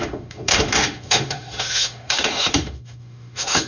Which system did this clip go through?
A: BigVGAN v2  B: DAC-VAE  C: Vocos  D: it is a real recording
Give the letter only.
B